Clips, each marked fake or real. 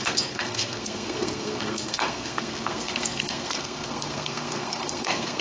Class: fake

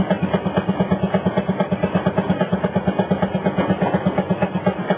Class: real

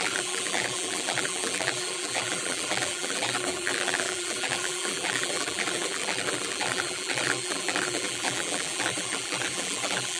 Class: fake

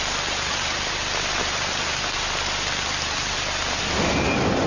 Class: real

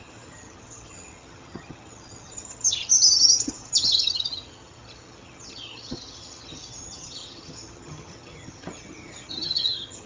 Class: fake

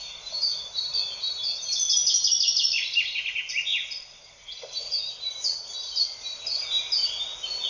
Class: real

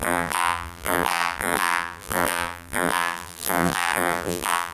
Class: fake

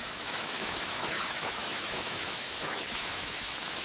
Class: fake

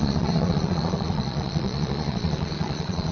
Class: fake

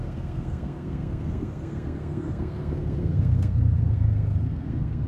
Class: fake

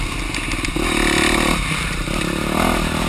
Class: real